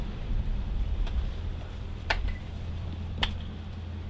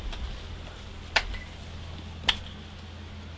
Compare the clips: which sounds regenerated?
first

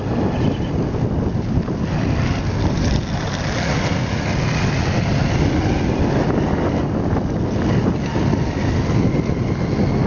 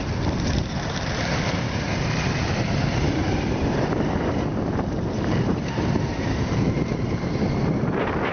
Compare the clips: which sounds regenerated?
second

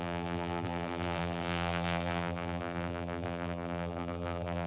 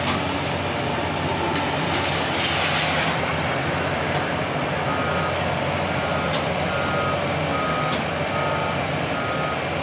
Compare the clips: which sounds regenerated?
first